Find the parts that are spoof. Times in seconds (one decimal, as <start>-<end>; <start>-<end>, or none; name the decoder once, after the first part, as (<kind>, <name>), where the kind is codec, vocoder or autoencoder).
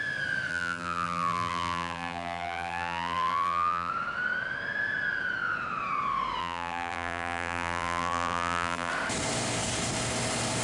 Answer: 0.5-3.9 (vocoder, BigVGAN v2); 6.4-8.9